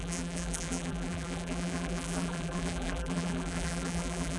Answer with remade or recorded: remade